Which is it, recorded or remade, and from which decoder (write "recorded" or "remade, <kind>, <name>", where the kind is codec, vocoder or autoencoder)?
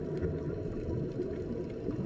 recorded